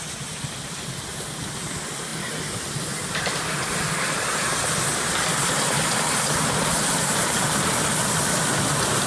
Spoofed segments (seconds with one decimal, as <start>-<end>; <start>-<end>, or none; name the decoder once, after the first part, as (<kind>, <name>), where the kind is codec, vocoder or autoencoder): none